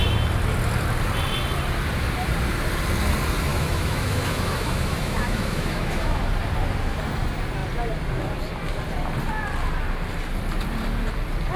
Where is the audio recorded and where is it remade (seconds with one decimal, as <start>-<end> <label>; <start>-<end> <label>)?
0.0-3.5 recorded; 3.5-6.2 remade; 6.2-11.6 recorded